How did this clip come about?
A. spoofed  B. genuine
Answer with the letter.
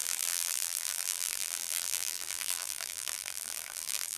A